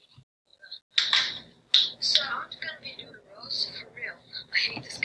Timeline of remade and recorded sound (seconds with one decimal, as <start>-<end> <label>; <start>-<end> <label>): 0.0-5.0 recorded